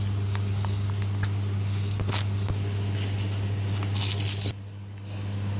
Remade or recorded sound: recorded